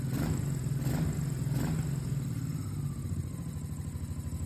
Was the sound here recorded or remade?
recorded